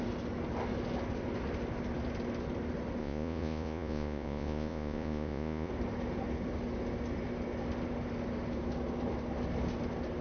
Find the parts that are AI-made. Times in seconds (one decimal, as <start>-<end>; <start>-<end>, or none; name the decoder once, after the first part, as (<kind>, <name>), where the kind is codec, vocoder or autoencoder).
3.0-5.7 (vocoder, Vocos)